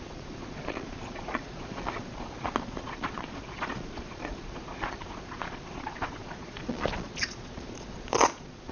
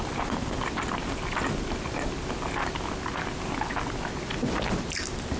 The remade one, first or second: first